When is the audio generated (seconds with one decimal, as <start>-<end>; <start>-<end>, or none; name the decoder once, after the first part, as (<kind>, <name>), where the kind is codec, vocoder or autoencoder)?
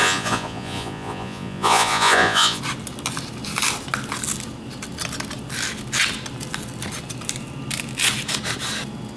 0.0-2.6 (vocoder, Vocos)